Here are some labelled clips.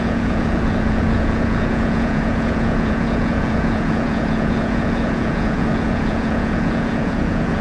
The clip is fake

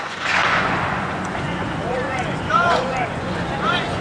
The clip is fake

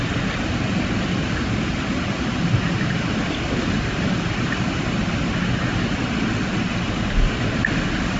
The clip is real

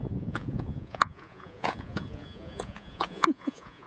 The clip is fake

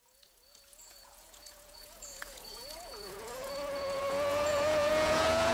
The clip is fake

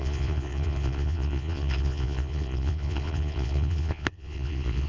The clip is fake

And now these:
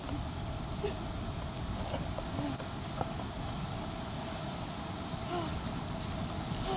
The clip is real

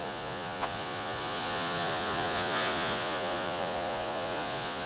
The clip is fake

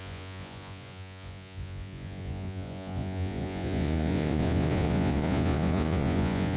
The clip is fake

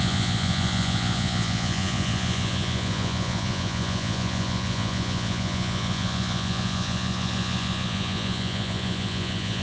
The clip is fake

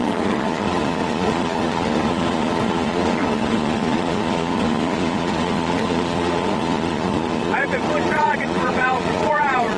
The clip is fake